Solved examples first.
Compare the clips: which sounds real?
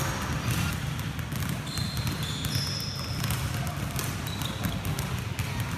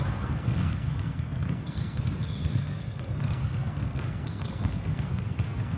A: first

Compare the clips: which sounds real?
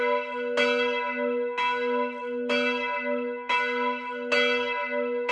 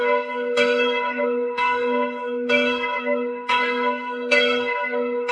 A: first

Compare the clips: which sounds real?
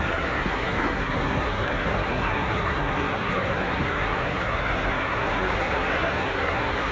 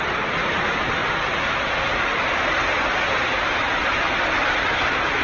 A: second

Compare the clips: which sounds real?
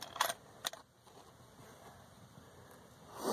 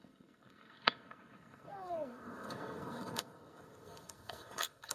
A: first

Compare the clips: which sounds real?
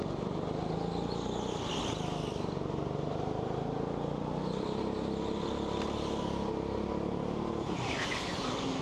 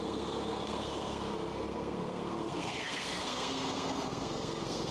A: first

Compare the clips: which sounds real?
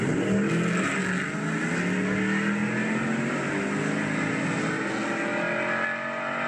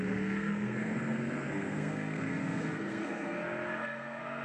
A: first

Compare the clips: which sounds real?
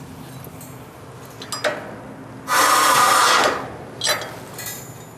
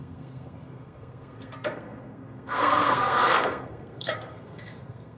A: first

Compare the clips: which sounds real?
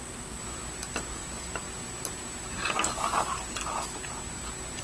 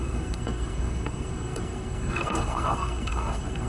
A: first